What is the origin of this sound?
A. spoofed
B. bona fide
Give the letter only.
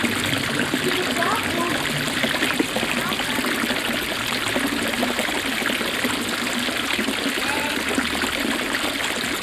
B